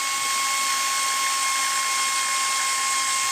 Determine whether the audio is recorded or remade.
recorded